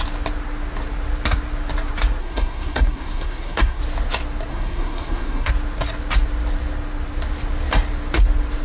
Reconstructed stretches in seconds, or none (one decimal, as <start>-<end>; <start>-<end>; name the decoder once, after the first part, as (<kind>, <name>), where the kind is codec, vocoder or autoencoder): 2.2-3.8 (codec, SNAC); 4.5-5.5